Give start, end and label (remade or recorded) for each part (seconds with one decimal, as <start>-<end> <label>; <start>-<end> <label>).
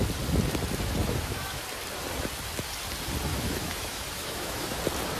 0.0-1.0 recorded; 1.0-1.6 remade; 1.6-3.3 recorded; 3.3-4.8 remade; 4.8-5.2 recorded